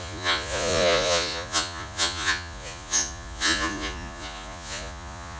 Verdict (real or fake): fake